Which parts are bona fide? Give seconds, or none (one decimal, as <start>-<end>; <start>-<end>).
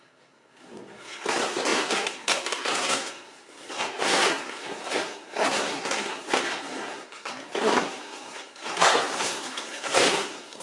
none